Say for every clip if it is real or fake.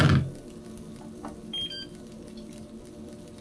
real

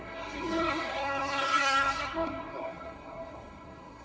fake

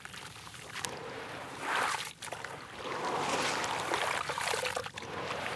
real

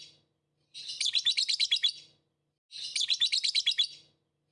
real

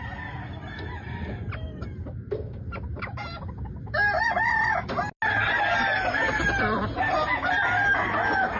real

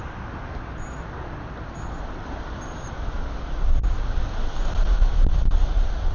real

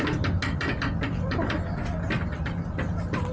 real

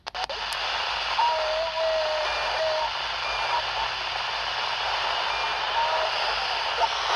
real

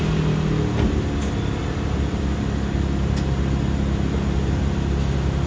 real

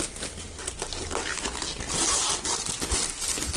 real